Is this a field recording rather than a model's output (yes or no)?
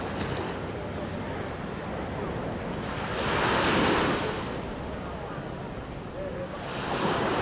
yes